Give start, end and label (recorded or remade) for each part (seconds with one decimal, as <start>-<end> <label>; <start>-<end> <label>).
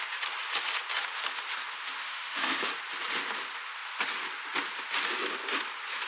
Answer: 0.0-2.0 recorded; 2.0-2.7 remade; 2.7-6.1 recorded